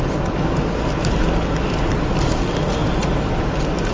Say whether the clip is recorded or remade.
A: recorded